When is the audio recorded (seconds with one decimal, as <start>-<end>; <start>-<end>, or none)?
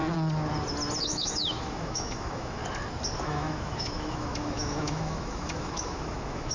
0.0-1.0; 2.6-3.2